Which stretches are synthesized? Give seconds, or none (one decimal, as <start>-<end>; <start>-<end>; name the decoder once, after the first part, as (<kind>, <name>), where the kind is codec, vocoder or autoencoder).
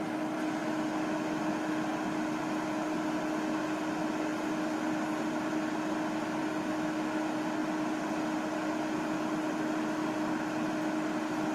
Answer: none